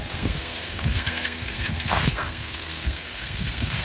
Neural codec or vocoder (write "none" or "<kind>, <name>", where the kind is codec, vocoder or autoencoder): codec, SNAC